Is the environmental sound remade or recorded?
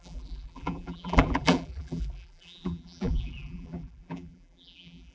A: remade